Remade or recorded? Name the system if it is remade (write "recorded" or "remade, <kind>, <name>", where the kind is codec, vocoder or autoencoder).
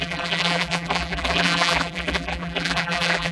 remade, vocoder, BigVGAN v2